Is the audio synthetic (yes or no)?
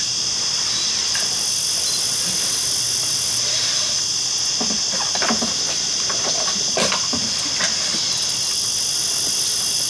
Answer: no